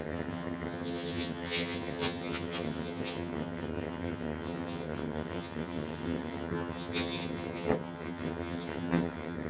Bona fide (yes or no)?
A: no